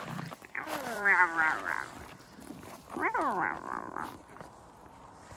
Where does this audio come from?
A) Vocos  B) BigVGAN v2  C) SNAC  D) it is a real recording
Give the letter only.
B